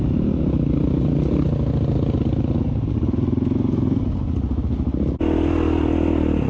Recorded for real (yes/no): yes